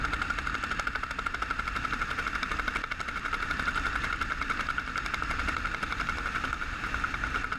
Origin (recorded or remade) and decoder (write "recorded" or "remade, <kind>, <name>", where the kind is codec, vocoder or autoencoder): remade, vocoder, BigVGAN v2